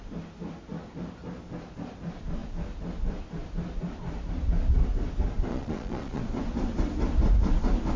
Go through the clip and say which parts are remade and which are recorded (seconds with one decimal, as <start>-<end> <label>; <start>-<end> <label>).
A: 0.0-5.5 recorded; 5.5-6.2 remade; 6.2-8.0 recorded